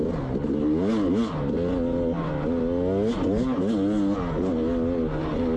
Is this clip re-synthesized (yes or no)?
no